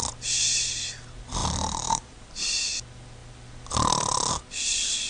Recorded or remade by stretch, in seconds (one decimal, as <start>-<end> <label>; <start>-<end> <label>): 0.0-1.4 recorded; 1.4-2.7 remade; 2.7-5.1 recorded